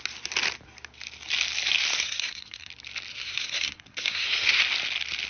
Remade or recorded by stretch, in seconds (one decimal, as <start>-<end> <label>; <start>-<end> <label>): 0.0-1.9 recorded; 1.9-2.7 remade; 2.7-3.1 recorded; 3.1-4.6 remade; 4.6-5.3 recorded